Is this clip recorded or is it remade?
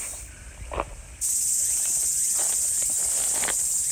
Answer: recorded